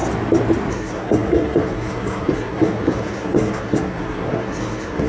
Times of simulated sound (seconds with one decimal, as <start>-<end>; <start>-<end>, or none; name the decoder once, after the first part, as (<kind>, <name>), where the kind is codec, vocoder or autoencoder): 0.7-5.1 (codec, SNAC)